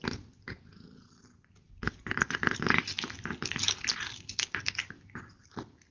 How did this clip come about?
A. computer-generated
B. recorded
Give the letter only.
B